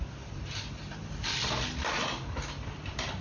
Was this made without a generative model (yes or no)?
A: yes